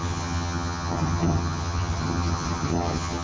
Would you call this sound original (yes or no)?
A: no